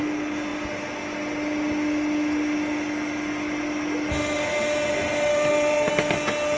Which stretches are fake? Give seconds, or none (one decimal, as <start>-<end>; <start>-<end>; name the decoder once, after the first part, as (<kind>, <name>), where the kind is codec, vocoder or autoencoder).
5.1-5.9 (vocoder, BigVGAN v2)